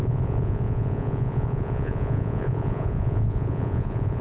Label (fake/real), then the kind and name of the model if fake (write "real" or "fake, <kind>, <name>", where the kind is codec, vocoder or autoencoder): fake, vocoder, Vocos